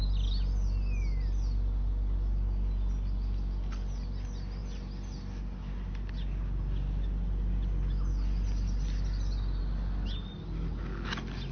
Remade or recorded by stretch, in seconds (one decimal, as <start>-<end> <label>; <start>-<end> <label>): 0.0-11.5 recorded